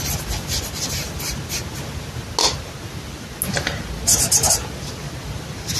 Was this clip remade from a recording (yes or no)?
no